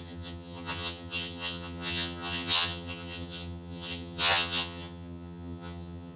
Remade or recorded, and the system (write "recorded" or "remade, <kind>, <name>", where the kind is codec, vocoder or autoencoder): remade, vocoder, HiFi-GAN